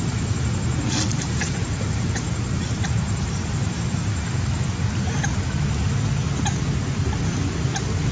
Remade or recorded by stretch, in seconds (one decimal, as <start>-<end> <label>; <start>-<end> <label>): 0.0-1.1 recorded; 1.1-4.8 remade; 4.8-8.1 recorded